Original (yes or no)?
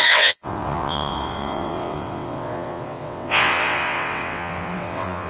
no